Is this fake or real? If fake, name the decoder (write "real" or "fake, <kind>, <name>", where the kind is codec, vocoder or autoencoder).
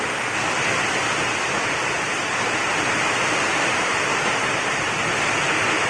real